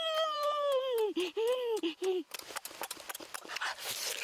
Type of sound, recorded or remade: recorded